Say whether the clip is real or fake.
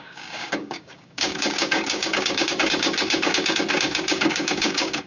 fake